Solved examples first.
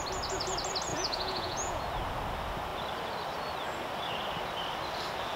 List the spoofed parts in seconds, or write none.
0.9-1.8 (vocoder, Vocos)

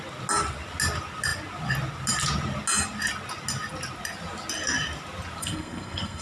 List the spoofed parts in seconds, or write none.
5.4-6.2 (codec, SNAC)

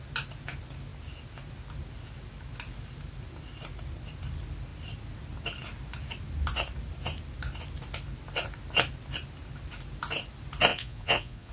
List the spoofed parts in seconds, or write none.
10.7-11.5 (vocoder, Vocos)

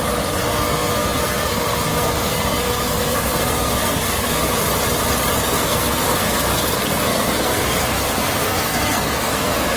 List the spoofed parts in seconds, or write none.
0.4-4.6 (codec, SNAC); 5.4-9.8

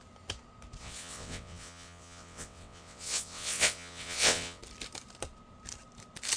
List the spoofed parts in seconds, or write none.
0.8-4.6 (vocoder, WaveNeXt)